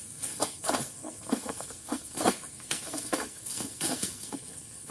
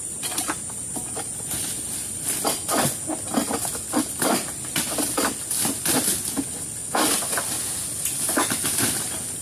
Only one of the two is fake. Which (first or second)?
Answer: first